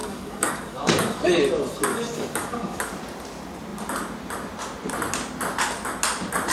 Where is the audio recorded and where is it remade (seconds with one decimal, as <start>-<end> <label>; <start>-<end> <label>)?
0.0-1.4 remade; 1.4-1.9 recorded; 1.9-2.9 remade; 2.9-6.5 recorded